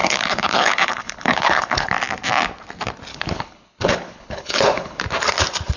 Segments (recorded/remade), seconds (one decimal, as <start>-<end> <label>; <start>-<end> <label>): 0.0-1.9 remade; 1.9-3.1 recorded; 3.1-5.0 remade; 5.0-5.8 recorded